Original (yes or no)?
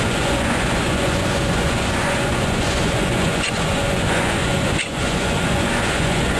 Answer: no